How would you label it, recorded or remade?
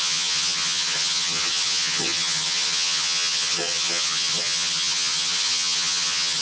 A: remade